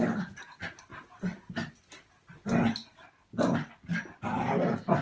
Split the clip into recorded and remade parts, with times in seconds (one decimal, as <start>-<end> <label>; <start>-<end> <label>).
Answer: 0.0-5.0 recorded